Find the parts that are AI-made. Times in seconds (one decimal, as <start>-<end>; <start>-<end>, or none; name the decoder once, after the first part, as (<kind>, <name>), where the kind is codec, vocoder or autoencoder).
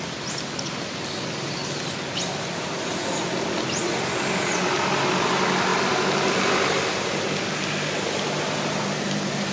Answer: none